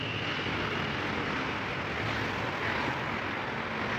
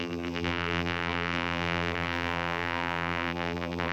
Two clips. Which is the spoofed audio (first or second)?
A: second